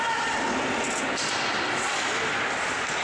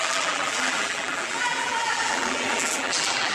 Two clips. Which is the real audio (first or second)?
first